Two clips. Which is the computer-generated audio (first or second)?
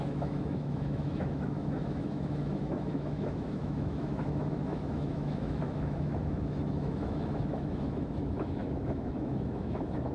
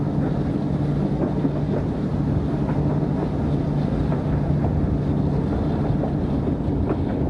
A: first